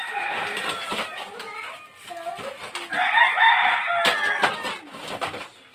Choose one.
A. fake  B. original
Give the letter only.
B